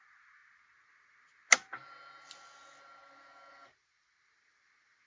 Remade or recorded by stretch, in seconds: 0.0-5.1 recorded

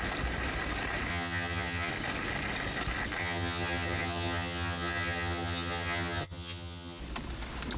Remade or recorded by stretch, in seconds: 0.0-1.1 recorded; 1.1-1.9 remade; 1.9-3.2 recorded; 3.2-7.0 remade; 7.0-7.8 recorded

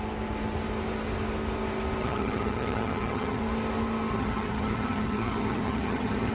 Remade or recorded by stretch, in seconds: 0.0-2.0 recorded; 2.0-3.4 remade; 3.4-4.1 recorded; 4.1-6.3 remade

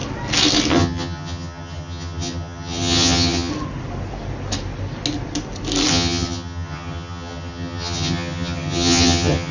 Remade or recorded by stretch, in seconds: 0.0-0.7 recorded; 0.7-3.5 remade; 3.5-5.9 recorded; 5.9-9.5 remade

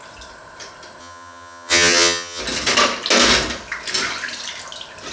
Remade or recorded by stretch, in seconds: 0.0-1.0 recorded; 1.0-2.4 remade; 2.4-5.1 recorded

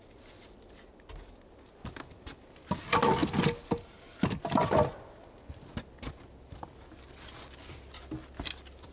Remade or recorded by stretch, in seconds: 0.0-8.9 recorded

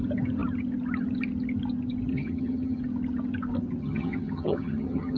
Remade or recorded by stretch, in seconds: 0.0-2.1 recorded; 2.1-2.8 remade; 2.8-3.8 recorded; 3.8-5.2 remade